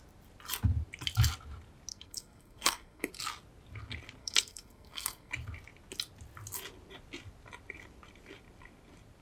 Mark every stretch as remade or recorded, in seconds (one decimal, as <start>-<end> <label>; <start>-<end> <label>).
0.0-1.9 recorded; 1.9-3.1 remade; 3.1-4.2 recorded; 4.2-5.3 remade; 5.3-9.2 recorded